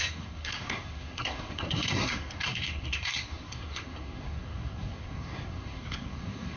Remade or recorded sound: remade